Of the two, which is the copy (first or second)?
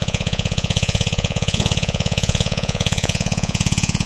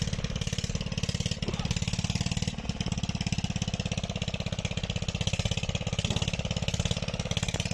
first